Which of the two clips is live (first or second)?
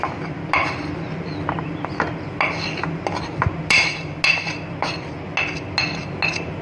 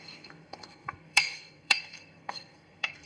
first